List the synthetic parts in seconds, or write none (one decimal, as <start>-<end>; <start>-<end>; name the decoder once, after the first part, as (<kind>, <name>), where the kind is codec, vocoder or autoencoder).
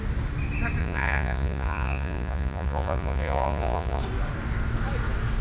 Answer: 0.8-4.0 (vocoder, Vocos)